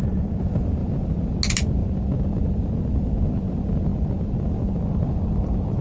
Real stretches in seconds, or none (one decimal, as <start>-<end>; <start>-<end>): 0.0-5.8